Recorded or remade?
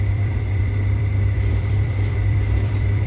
remade